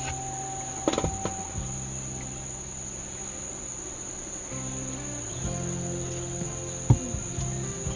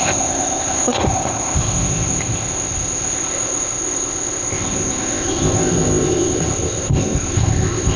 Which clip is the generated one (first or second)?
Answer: second